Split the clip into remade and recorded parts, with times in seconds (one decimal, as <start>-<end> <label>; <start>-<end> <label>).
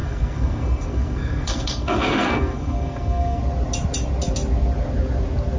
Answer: 0.0-3.4 remade; 3.4-5.6 recorded